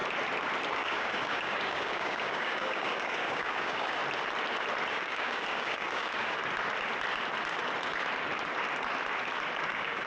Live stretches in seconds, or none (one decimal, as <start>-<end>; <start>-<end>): 0.0-0.7; 4.0-4.9; 6.4-9.6